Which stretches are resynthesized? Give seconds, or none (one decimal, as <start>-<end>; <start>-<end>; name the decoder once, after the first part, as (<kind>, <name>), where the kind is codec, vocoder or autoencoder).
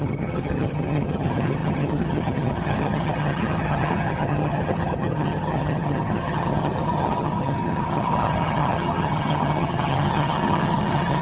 0.0-11.2 (vocoder, HiFi-GAN)